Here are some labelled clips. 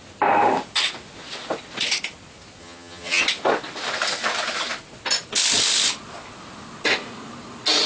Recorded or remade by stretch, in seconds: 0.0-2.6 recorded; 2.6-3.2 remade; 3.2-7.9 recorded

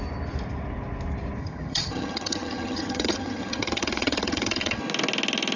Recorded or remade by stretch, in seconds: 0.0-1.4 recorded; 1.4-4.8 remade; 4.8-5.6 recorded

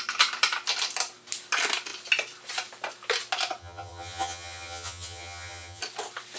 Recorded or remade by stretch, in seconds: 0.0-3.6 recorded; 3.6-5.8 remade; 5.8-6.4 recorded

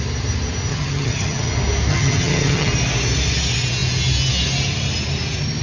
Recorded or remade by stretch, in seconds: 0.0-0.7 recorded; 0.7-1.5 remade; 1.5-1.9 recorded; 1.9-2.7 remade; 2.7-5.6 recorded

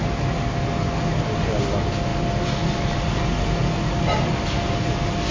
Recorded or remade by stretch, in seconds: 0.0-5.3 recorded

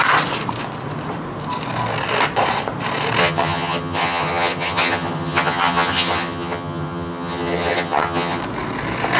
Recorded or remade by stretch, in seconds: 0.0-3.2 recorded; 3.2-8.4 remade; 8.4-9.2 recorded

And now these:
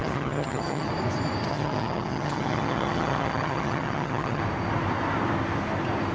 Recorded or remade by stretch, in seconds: 0.0-0.9 remade; 0.9-1.5 recorded; 1.5-4.4 remade; 4.4-6.1 recorded